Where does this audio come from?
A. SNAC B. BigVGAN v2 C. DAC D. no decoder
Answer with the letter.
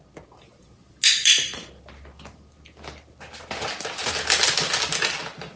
D